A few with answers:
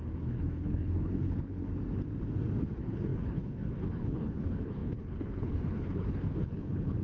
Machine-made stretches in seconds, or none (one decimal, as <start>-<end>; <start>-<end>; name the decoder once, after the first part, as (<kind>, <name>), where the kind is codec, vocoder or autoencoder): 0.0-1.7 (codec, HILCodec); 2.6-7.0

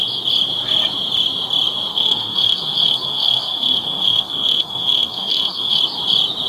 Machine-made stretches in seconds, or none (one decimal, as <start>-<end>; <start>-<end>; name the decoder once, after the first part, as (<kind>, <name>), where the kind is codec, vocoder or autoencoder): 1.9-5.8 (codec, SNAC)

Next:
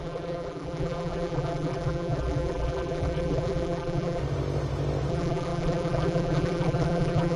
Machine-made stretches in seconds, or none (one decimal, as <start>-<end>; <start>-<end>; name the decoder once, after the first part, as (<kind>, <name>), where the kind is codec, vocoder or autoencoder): 0.0-4.2 (vocoder, BigVGAN v2); 5.1-7.4

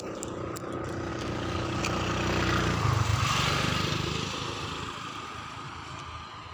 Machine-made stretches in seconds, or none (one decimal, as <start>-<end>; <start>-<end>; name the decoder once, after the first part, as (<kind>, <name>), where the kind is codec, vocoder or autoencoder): 1.1-1.8 (codec, DAC)

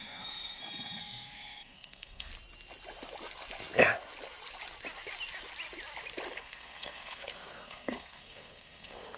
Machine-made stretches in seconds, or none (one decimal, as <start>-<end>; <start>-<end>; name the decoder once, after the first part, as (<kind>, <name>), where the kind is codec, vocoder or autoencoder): 0.0-2.3 (codec, SNAC); 6.4-9.2

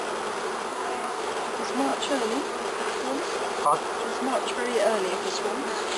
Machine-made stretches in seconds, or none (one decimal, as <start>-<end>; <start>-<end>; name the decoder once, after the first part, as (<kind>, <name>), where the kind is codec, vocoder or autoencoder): 0.7-1.2 (codec, DAC)

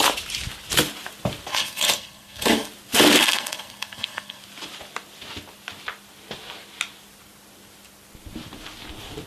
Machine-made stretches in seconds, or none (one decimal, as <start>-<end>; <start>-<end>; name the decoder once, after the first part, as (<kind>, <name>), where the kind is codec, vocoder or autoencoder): 1.5-2.7 (codec, SNAC); 3.2-4.4